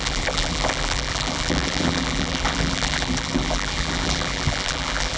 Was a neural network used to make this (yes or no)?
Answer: yes